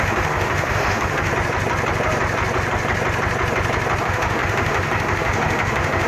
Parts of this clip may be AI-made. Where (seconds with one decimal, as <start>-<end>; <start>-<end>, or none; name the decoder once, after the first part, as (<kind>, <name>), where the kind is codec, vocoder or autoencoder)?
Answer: 0.0-1.3 (autoencoder, DAC-VAE); 4.0-6.1